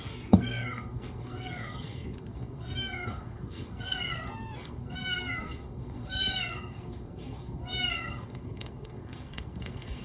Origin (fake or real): fake